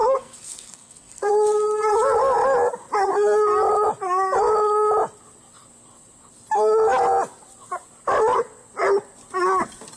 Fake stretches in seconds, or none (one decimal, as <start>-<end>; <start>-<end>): 0.0-1.3